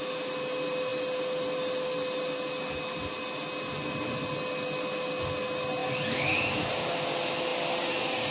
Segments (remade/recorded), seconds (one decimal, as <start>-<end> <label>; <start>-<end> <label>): 0.0-8.3 recorded